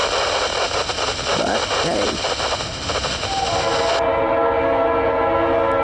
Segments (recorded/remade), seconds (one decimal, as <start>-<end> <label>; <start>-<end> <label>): 0.0-5.8 recorded